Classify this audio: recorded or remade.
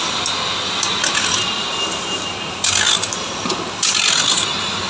recorded